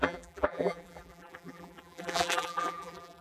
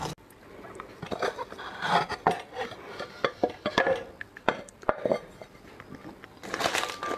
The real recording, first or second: second